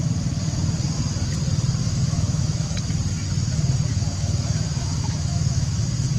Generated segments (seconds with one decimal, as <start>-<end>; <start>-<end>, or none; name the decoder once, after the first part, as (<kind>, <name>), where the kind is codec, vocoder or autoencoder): 1.8-2.8 (autoencoder, DAC-VAE); 3.9-5.8